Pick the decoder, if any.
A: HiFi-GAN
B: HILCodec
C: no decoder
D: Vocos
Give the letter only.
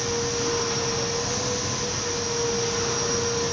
C